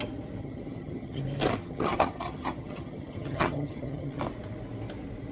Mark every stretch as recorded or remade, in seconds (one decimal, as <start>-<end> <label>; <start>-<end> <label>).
0.0-0.4 recorded; 0.4-1.2 remade; 1.2-1.6 recorded; 1.6-4.2 remade; 4.2-5.3 recorded